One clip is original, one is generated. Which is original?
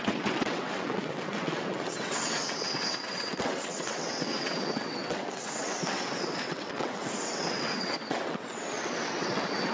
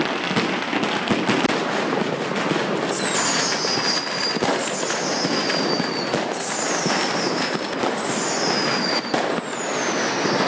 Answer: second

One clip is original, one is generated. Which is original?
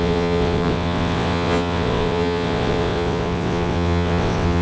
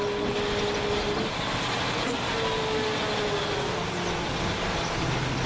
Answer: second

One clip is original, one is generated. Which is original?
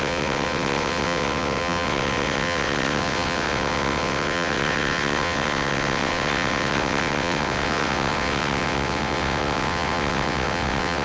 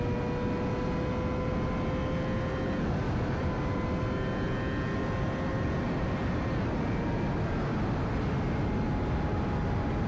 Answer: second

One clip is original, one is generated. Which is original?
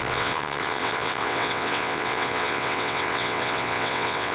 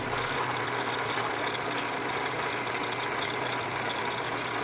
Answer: second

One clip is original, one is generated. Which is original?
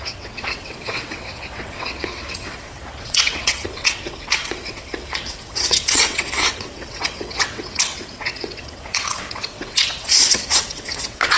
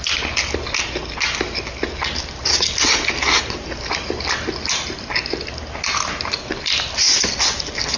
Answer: second